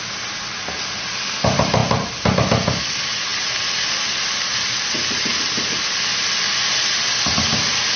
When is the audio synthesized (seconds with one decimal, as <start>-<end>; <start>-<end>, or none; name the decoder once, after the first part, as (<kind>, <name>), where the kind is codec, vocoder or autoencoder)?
0.0-1.8 (vocoder, BigVGAN v2); 2.8-8.0